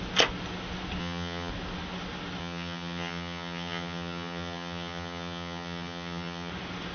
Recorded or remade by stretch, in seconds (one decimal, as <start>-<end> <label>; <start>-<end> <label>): 0.0-1.0 recorded; 1.0-1.5 remade; 1.5-2.4 recorded; 2.4-6.5 remade; 6.5-6.9 recorded